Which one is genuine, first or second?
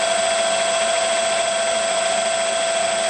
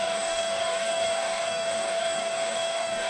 first